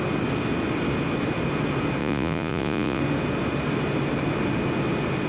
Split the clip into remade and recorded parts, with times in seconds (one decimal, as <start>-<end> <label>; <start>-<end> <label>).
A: 0.0-2.0 recorded; 2.0-3.0 remade; 3.0-5.3 recorded